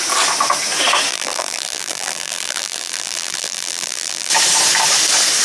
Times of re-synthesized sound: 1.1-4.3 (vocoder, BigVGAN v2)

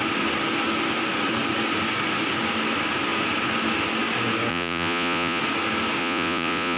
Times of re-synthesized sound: 4.5-5.4 (vocoder, Vocos); 6.0-6.8

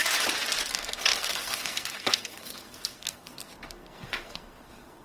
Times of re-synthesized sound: 0.7-5.0 (codec, SNAC)